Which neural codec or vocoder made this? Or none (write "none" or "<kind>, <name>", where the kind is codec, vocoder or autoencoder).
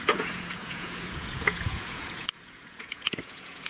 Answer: vocoder, Vocos